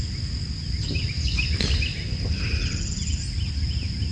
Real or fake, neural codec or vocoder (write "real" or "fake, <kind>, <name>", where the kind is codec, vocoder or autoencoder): real